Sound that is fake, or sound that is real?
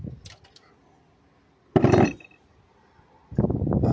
real